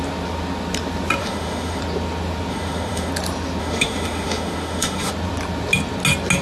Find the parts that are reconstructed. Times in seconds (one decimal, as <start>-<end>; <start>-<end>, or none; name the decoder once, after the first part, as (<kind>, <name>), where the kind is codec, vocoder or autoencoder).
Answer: 1.2-1.8 (autoencoder, DAC-VAE); 2.5-3.1; 3.6-5.1